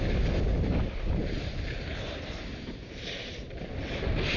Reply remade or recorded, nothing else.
recorded